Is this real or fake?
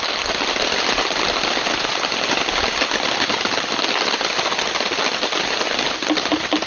real